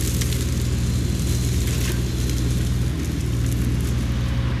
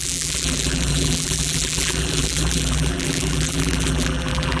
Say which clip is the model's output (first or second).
second